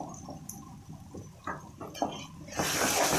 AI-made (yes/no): no